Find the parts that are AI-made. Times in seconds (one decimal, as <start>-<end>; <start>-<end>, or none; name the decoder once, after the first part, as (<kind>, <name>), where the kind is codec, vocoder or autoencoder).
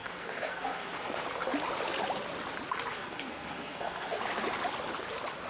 0.0-1.2 (codec, SNAC); 2.9-4.2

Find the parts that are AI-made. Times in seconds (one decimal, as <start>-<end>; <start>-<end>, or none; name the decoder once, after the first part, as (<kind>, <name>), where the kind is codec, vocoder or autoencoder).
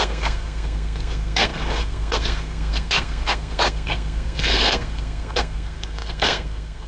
0.0-6.9 (codec, SNAC)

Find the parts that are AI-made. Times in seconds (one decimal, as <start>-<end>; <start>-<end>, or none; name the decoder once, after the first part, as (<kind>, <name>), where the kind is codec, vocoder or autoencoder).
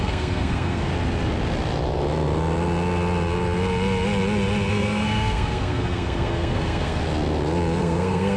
0.0-0.9 (codec, SNAC); 4.7-7.0; 7.8-8.4